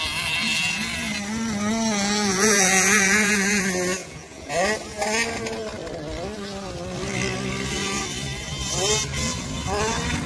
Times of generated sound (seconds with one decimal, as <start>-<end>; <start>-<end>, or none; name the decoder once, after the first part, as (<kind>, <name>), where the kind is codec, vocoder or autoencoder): 2.3-3.6 (vocoder, Vocos); 4.0-4.5